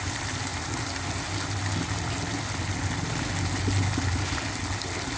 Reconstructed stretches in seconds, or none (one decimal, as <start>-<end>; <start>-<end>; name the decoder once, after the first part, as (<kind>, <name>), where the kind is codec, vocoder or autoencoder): none